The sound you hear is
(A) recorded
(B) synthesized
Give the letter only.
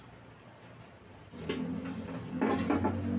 A